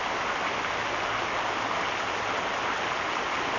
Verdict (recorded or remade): recorded